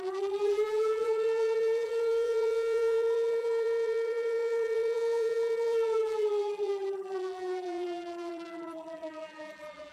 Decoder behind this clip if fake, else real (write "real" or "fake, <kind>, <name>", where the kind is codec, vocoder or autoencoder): fake, vocoder, BigVGAN v2